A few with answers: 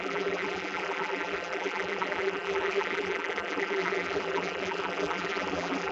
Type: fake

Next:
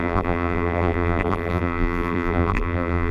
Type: fake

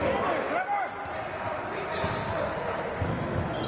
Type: real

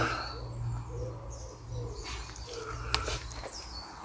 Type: real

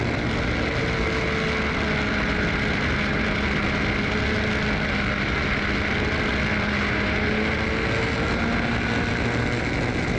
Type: real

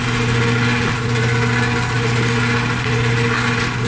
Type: real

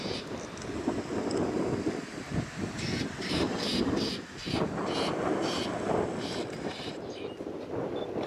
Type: fake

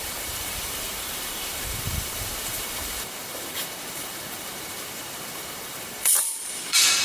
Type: fake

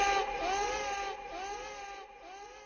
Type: real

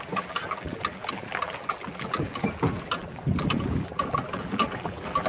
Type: fake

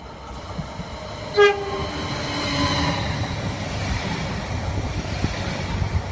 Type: real